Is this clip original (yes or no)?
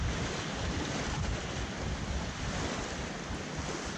yes